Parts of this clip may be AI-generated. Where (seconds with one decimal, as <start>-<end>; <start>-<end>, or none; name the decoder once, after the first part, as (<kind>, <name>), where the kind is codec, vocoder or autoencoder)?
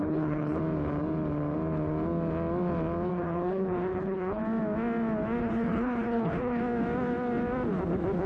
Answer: 0.0-0.6 (codec, HILCodec); 3.1-4.4; 5.4-6.6